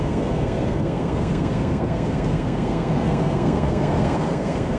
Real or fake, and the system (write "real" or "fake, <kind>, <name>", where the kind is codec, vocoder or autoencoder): fake, codec, SNAC